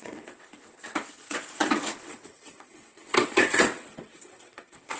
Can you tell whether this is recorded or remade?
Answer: remade